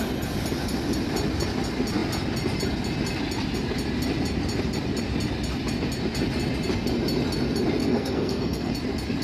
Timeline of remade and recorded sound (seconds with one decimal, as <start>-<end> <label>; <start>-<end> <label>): 0.0-7.8 recorded; 7.8-8.7 remade; 8.7-9.2 recorded